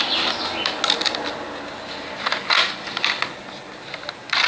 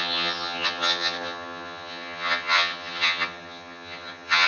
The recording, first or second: first